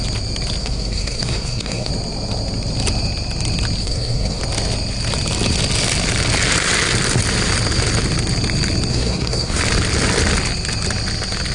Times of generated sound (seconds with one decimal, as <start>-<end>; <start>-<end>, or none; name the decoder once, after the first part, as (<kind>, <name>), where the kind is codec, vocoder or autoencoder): 0.6-1.9 (codec, SNAC); 3.8-4.4; 8.9-9.6